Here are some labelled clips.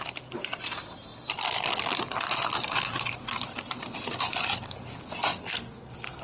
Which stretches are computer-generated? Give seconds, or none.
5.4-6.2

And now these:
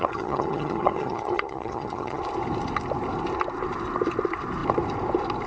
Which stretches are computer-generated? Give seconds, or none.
0.0-2.2